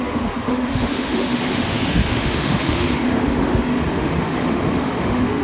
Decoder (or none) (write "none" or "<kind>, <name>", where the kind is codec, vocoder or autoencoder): autoencoder, DAC-VAE